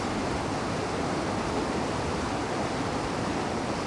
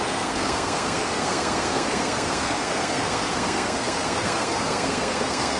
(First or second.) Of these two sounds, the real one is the first